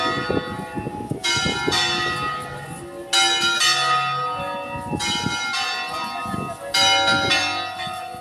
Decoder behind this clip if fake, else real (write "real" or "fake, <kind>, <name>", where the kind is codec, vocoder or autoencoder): real